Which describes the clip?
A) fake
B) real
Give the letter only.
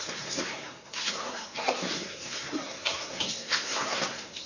A